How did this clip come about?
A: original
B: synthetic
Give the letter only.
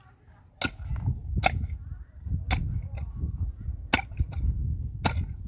A